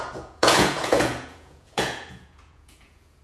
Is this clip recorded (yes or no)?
no